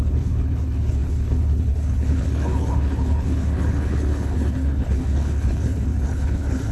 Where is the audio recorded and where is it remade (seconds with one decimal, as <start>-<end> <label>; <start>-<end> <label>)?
0.0-6.7 remade